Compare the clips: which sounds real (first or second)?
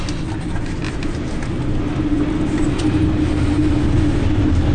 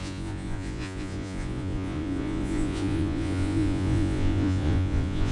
first